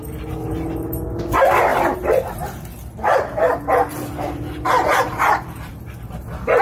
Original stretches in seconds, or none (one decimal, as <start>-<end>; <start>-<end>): 0.0-1.7; 5.7-6.6